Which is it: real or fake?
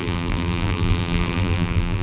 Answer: fake